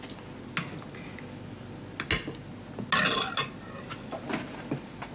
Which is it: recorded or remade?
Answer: recorded